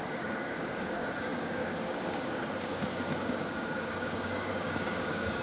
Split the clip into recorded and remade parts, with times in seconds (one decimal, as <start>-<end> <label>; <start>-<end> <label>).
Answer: 0.0-5.4 remade